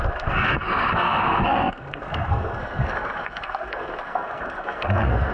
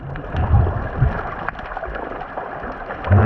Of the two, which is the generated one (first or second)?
first